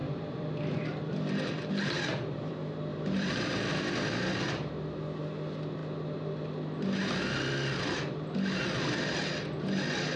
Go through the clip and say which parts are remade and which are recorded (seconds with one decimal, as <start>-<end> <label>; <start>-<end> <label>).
0.0-2.5 remade; 2.5-2.9 recorded; 2.9-4.7 remade; 4.7-10.2 recorded

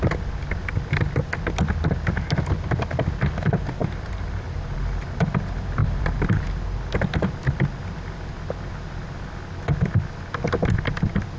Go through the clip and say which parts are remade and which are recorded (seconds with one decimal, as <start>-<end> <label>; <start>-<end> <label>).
0.0-3.8 recorded; 3.8-4.8 remade; 4.8-5.8 recorded; 5.8-6.5 remade; 6.5-11.4 recorded

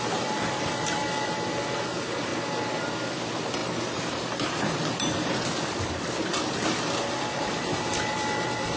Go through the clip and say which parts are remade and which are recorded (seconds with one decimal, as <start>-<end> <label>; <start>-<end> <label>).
0.0-2.3 remade; 2.3-2.9 recorded; 2.9-8.8 remade

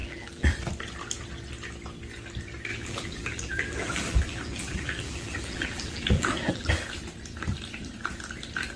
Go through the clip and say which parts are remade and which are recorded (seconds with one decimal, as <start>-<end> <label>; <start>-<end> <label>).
0.0-0.5 remade; 0.5-2.7 recorded; 2.7-6.7 remade; 6.7-8.8 recorded

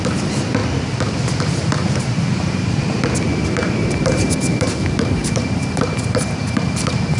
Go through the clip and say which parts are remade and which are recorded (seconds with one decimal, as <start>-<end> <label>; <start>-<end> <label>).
0.0-0.6 remade; 0.6-3.8 recorded; 3.8-7.2 remade

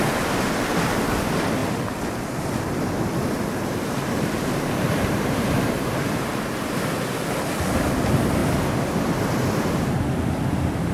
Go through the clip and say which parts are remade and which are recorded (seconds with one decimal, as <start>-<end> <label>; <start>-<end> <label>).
0.0-3.7 recorded; 3.7-7.0 remade; 7.0-10.9 recorded

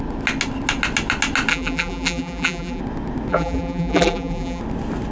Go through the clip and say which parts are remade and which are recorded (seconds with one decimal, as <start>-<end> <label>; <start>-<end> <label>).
0.0-1.5 recorded; 1.5-2.8 remade; 2.8-3.3 recorded; 3.3-4.6 remade; 4.6-5.1 recorded

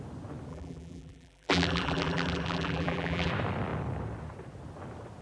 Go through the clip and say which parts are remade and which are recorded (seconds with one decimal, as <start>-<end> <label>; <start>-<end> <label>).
0.0-0.5 recorded; 0.5-3.3 remade; 3.3-5.2 recorded